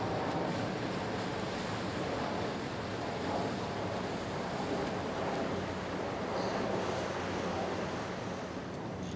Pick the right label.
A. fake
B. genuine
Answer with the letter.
B